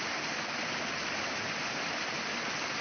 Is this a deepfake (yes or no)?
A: no